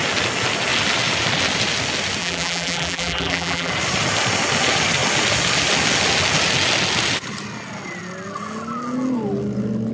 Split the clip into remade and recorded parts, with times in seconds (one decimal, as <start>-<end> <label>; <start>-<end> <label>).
0.0-2.2 recorded; 2.2-3.7 remade; 3.7-9.9 recorded